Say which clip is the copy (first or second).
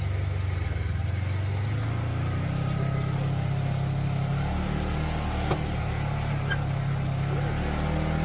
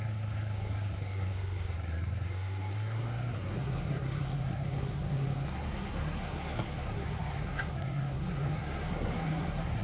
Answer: second